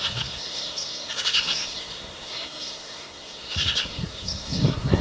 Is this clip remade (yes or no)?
yes